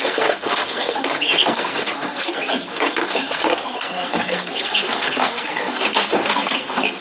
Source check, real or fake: fake